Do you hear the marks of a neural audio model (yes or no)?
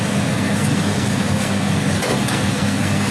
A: yes